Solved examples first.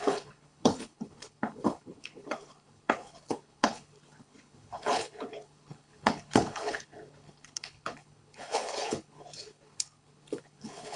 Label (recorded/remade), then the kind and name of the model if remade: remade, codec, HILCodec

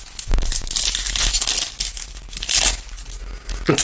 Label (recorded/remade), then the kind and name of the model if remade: recorded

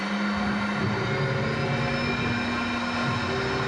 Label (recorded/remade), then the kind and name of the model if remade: recorded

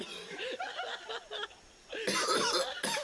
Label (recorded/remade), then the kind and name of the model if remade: recorded